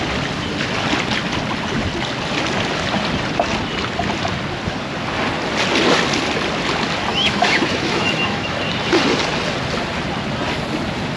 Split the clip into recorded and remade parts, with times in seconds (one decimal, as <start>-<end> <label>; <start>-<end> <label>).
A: 0.0-7.1 recorded; 7.1-8.6 remade; 8.6-11.2 recorded